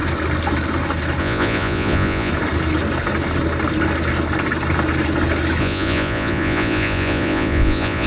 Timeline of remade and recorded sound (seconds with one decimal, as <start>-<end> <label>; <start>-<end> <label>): 0.0-1.2 recorded; 1.2-2.3 remade; 2.3-5.6 recorded; 5.6-8.1 remade